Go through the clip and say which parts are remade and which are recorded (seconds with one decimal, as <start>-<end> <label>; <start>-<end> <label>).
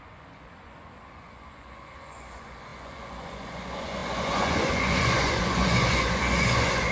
0.0-6.9 remade